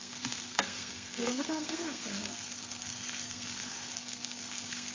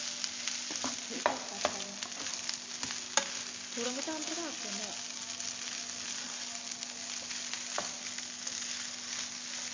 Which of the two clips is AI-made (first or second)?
first